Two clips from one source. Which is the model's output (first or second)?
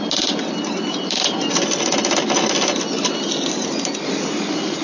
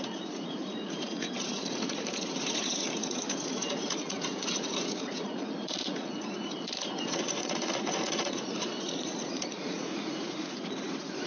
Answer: second